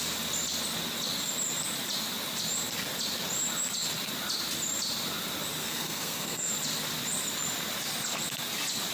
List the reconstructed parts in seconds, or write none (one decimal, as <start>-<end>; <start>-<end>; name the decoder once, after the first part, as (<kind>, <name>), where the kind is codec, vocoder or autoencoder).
5.6-6.5 (codec, SNAC)